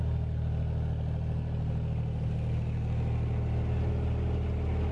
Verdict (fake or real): real